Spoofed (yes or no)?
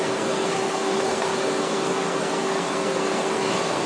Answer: yes